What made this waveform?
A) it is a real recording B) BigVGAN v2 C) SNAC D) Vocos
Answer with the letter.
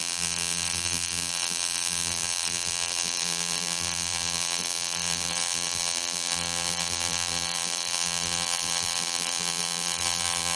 B